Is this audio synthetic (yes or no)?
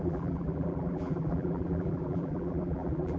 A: yes